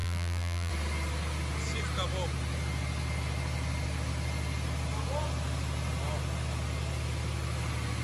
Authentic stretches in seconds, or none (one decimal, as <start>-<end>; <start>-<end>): 0.7-8.0